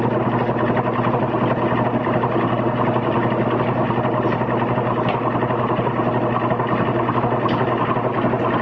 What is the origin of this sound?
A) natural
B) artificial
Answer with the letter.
A